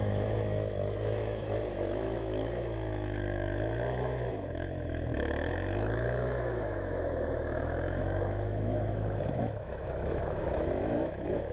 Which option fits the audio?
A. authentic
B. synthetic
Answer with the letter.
B